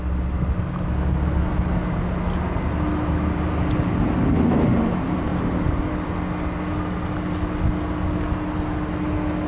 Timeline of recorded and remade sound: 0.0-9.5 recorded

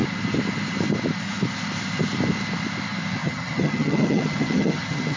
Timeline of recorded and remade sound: 0.0-3.2 recorded; 3.2-5.2 remade

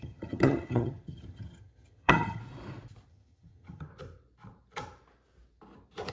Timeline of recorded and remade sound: 0.0-2.4 remade; 2.4-3.1 recorded; 3.1-3.9 remade; 3.9-6.1 recorded

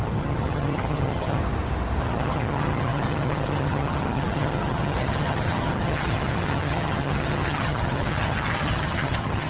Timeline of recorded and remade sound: 0.0-1.4 remade; 1.4-2.0 recorded; 2.0-9.5 remade

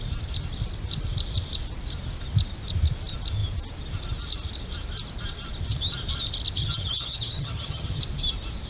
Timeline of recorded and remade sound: 0.0-6.6 recorded; 6.6-8.0 remade; 8.0-8.7 recorded

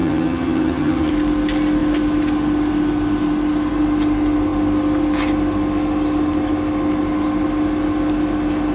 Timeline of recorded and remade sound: 0.0-1.1 remade; 1.1-8.7 recorded

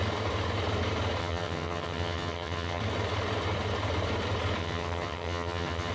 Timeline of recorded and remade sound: 0.0-1.2 recorded; 1.2-2.8 remade; 2.8-4.6 recorded; 4.6-5.9 remade